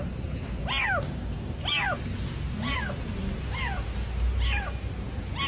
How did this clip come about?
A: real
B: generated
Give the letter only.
A